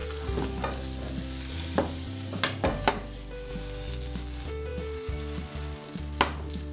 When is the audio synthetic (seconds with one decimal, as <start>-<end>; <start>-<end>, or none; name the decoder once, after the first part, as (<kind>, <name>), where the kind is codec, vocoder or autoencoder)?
none

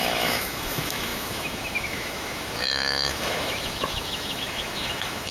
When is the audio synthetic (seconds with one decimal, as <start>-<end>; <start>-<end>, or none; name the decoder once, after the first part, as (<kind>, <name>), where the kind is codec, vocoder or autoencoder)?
0.0-5.3 (autoencoder, DAC-VAE)

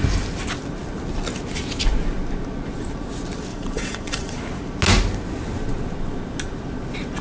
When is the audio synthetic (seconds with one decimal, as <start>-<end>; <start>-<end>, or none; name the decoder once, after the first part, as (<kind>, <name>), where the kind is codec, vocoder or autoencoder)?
3.5-4.4 (vocoder, Vocos)

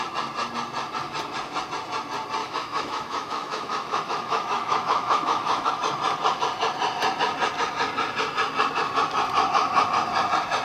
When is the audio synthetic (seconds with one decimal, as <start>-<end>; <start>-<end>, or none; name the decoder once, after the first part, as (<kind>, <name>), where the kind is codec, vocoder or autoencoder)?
2.4-5.7 (autoencoder, DAC-VAE)

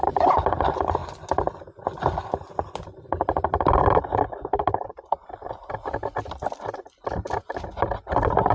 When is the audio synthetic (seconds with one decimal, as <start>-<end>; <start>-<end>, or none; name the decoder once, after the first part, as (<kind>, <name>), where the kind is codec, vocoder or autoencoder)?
none

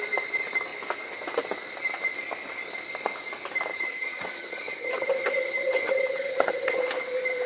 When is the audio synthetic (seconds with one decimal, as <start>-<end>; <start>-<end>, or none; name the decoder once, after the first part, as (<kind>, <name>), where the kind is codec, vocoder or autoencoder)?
3.7-6.8 (vocoder, HiFi-GAN)

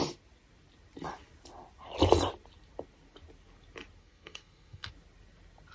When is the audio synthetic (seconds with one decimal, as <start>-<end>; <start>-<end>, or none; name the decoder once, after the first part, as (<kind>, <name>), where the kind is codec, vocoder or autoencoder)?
4.0-4.9 (codec, SNAC)

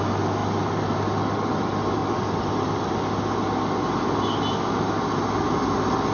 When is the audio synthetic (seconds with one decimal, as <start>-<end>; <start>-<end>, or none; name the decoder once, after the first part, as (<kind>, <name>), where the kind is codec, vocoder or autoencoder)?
none